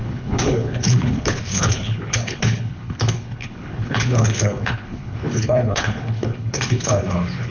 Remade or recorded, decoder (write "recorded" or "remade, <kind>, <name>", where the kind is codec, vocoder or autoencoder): remade, codec, HILCodec